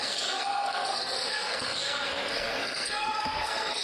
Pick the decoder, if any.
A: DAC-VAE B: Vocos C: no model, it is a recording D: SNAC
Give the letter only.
D